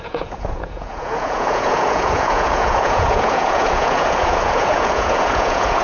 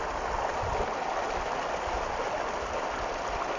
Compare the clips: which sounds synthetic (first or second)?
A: first